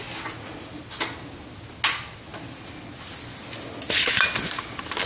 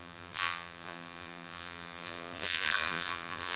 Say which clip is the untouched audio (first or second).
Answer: first